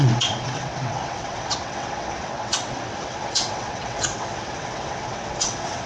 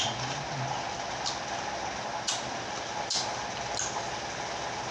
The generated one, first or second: first